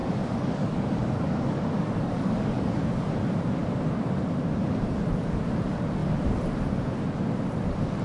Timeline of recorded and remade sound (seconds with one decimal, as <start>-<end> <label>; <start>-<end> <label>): 0.0-2.9 remade; 2.9-8.0 recorded